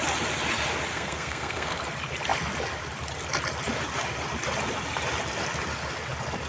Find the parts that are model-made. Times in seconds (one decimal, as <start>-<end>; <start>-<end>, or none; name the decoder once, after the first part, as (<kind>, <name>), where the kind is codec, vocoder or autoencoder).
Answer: 0.9-1.8 (codec, SNAC)